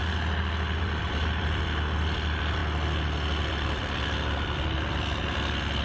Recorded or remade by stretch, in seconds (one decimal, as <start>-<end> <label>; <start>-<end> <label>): 0.0-0.8 recorded; 0.8-2.6 remade; 2.6-3.5 recorded; 3.5-5.8 remade